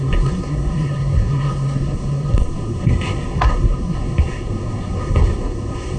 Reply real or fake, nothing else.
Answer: fake